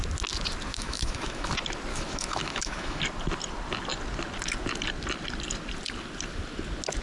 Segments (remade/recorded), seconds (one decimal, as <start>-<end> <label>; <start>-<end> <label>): 0.0-0.7 recorded; 0.7-1.5 remade; 1.5-1.9 recorded; 1.9-3.0 remade; 3.0-7.0 recorded